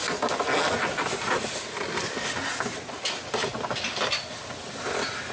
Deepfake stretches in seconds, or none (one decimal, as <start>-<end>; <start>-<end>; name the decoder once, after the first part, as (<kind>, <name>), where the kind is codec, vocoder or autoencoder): none